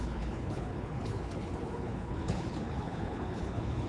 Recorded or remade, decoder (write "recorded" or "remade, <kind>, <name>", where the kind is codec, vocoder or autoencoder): remade, codec, HILCodec